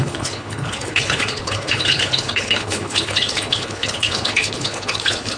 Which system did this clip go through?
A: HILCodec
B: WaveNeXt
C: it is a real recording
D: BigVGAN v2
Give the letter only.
A